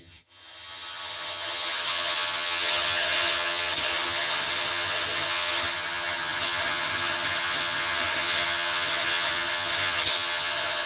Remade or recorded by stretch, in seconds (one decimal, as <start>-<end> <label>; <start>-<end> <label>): 0.0-10.9 remade